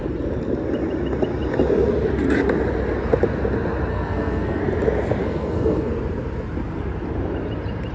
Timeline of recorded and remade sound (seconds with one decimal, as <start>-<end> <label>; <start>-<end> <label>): 0.0-3.9 recorded; 3.9-4.6 remade; 4.6-5.2 recorded; 5.2-5.9 remade; 5.9-7.9 recorded